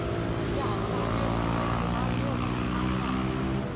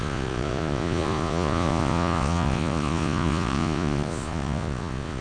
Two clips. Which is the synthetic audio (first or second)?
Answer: second